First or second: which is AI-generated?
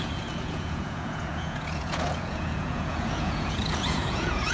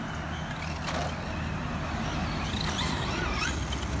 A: first